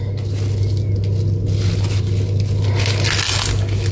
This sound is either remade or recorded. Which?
recorded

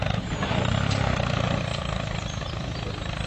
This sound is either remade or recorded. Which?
remade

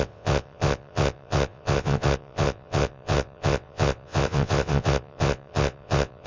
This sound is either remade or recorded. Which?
remade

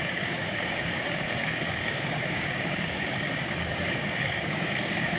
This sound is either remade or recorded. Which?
remade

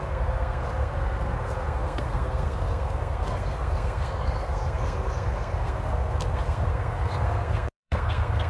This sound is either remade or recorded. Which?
remade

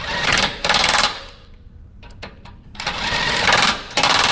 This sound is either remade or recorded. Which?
remade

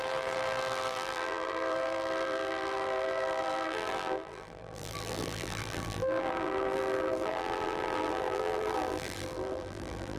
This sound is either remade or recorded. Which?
remade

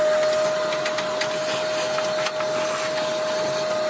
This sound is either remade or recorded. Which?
recorded